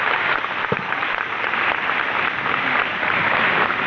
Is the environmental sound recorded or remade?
recorded